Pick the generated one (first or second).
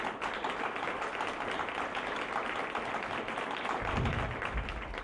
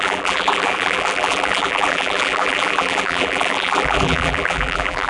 second